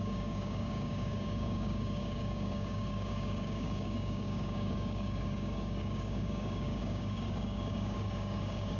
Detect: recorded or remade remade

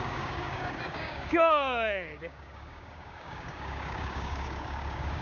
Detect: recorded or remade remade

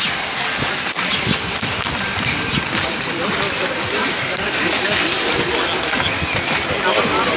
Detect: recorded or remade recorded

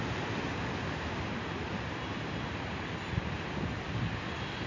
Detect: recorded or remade recorded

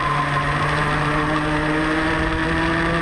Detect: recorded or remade recorded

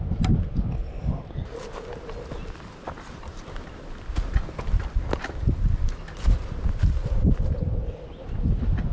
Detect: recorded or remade recorded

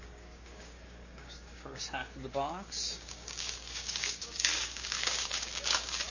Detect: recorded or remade remade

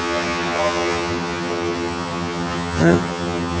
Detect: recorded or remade remade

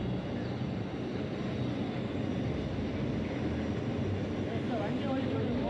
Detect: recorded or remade recorded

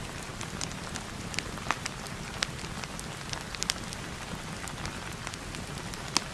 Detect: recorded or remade recorded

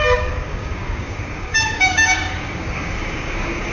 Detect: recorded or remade remade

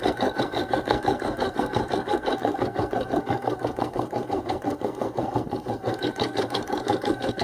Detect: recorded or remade remade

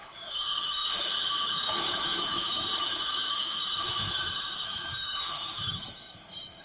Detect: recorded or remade remade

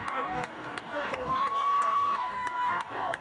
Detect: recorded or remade remade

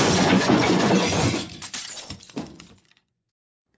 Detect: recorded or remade remade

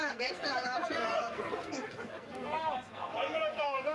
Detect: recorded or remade remade